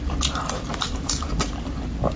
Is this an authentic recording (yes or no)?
no